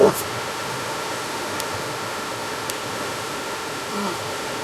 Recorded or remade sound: remade